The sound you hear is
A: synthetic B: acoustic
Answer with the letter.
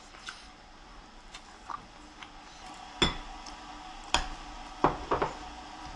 B